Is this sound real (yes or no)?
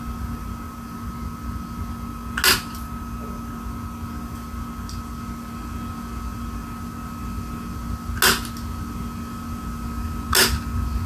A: yes